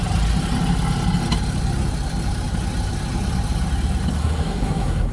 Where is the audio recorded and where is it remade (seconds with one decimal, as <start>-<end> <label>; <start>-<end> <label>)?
0.0-4.2 recorded; 4.2-5.1 remade